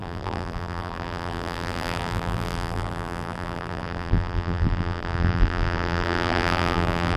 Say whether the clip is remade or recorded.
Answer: remade